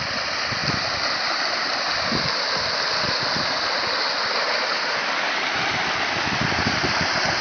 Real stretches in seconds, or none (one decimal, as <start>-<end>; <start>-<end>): 0.0-7.4